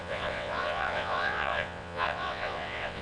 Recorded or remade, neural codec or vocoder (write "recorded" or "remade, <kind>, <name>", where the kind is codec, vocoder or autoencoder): remade, vocoder, WaveNeXt